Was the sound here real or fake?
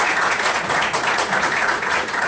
fake